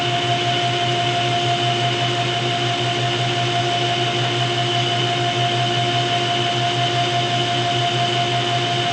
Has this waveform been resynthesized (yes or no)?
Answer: no